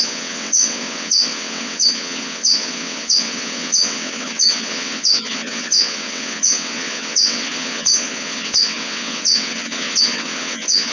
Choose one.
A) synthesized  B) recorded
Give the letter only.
A